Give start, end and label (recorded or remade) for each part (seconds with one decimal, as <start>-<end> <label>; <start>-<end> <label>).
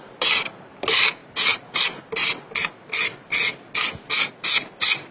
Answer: 0.0-5.1 recorded